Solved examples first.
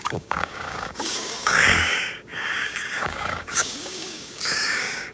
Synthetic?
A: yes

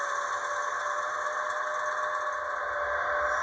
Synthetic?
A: no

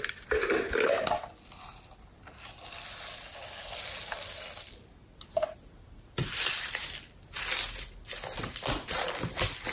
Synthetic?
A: no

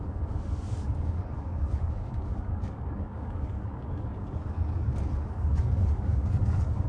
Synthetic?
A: yes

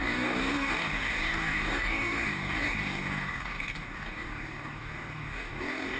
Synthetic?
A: yes